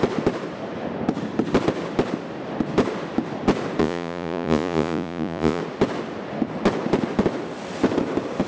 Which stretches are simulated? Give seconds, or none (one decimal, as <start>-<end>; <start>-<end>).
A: 3.8-5.6